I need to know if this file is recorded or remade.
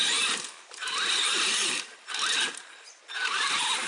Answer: remade